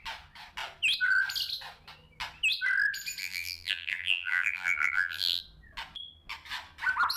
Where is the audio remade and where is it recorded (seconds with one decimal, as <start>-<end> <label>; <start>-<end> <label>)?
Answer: 0.0-3.2 recorded; 3.2-5.4 remade; 5.4-7.2 recorded